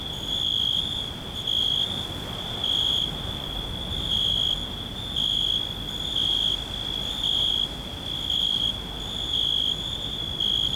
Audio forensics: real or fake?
real